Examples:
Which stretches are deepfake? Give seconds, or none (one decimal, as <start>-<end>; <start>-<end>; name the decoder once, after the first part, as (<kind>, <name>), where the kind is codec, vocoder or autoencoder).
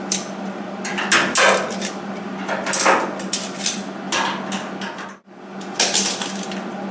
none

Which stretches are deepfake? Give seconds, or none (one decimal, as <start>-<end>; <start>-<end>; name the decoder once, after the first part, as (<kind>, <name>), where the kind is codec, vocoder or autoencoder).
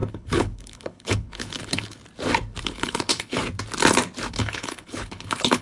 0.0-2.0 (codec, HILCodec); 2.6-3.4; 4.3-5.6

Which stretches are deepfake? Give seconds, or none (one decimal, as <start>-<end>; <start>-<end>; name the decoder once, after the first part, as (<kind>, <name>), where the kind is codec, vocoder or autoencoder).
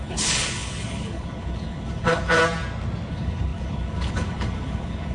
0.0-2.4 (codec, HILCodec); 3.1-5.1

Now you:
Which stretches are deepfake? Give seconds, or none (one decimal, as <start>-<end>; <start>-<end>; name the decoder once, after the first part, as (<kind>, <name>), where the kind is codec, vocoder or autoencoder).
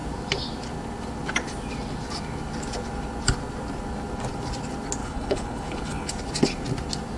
5.0-6.1 (codec, HILCodec)